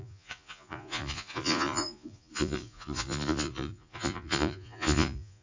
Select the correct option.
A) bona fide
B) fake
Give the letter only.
B